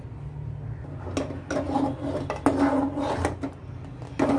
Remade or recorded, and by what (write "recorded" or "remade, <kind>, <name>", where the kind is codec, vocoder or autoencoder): recorded